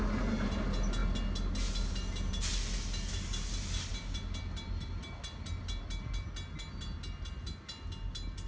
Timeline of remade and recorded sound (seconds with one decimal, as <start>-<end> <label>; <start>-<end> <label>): 0.0-8.5 recorded